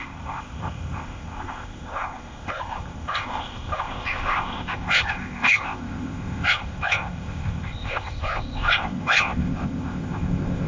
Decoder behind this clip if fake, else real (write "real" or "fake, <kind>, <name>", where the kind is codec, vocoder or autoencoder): fake, codec, ZipCodec